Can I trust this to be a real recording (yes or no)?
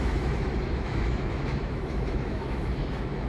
no